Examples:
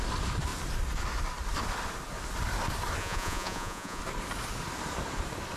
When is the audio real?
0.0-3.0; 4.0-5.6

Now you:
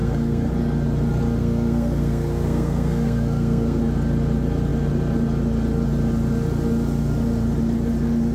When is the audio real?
0.5-1.4; 3.8-8.3